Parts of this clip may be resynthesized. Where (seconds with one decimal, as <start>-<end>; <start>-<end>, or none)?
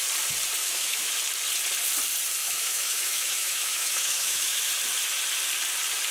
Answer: 0.6-1.1; 2.4-4.7